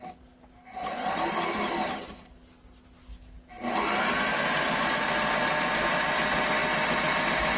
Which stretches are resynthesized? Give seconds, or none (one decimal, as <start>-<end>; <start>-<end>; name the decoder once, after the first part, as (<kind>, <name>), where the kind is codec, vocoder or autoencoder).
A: none